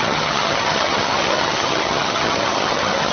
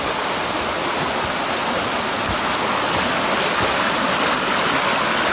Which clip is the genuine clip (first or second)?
second